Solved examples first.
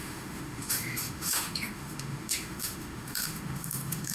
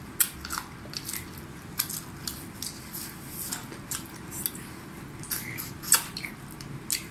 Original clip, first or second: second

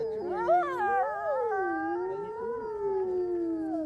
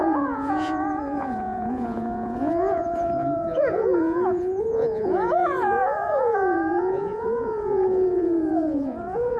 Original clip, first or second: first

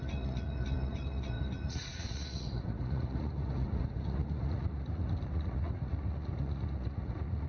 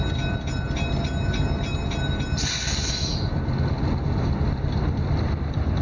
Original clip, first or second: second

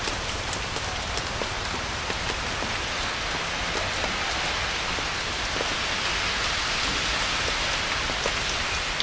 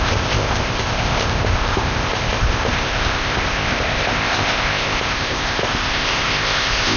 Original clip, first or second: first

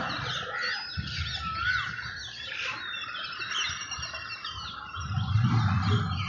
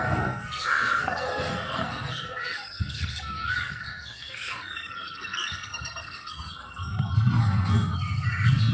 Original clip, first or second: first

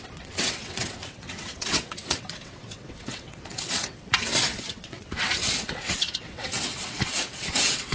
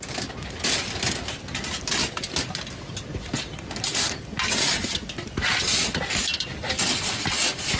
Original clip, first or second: second